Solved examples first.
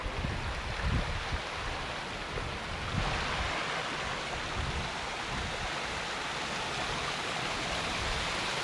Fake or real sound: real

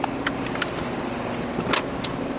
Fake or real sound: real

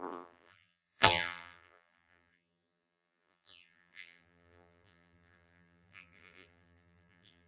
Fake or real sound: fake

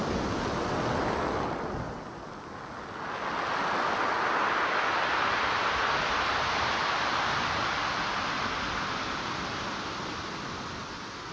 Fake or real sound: real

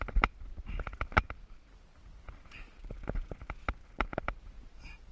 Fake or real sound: real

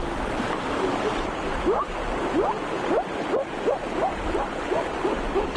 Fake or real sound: real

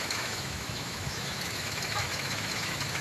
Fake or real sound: fake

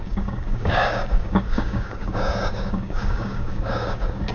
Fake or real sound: fake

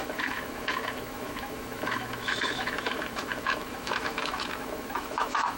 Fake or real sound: fake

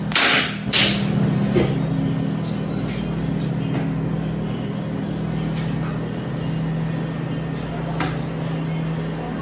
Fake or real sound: real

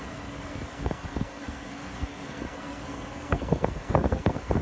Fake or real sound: fake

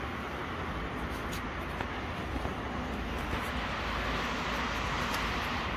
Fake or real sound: real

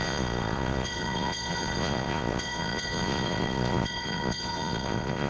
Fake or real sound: fake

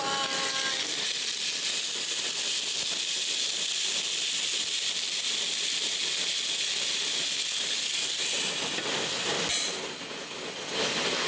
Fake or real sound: real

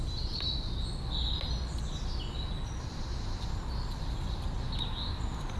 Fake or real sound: real